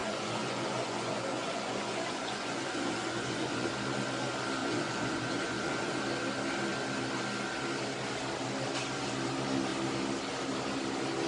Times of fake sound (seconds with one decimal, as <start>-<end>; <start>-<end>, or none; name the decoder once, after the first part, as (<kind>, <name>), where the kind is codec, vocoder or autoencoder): 0.0-3.7 (vocoder, Vocos); 4.6-6.0